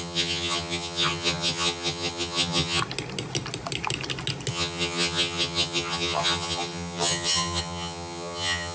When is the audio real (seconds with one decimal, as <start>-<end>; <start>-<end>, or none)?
2.8-4.5